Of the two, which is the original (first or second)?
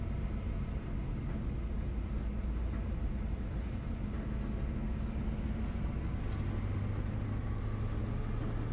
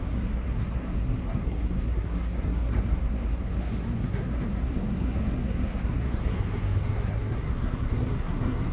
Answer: first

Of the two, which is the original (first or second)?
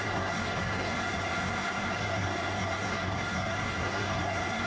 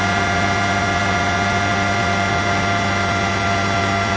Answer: second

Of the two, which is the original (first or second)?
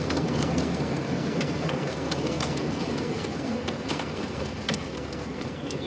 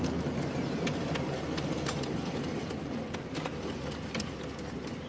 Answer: second